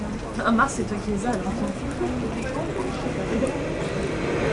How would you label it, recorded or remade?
recorded